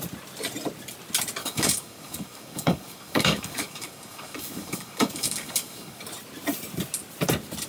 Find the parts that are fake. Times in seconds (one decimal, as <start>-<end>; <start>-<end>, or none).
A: 1.4-6.0